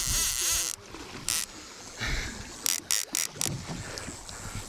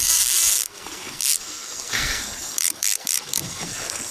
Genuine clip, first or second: first